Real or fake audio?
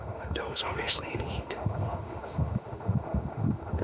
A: fake